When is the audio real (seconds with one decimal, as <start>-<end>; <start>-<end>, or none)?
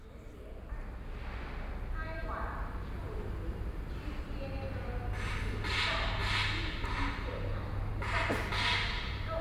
0.0-9.4